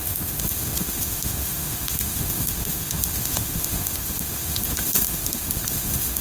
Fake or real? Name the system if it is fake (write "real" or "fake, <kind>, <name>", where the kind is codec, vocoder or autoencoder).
fake, autoencoder, DAC-VAE